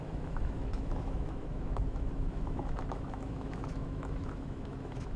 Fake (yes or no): yes